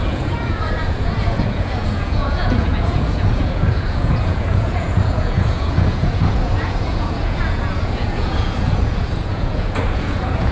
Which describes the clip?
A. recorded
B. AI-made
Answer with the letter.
B